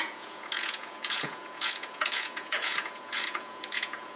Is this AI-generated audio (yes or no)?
yes